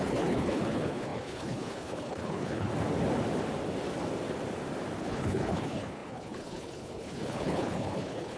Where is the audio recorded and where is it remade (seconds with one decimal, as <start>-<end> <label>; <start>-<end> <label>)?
0.0-2.7 remade; 2.7-5.0 recorded; 5.0-8.4 remade